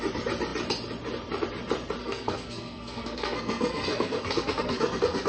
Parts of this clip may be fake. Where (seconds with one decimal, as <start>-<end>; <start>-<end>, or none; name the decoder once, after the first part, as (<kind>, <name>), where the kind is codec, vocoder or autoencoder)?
2.0-5.3 (codec, SNAC)